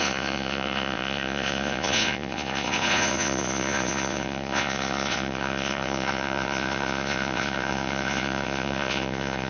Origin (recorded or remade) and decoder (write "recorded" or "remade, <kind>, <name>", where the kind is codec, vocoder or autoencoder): remade, vocoder, Vocos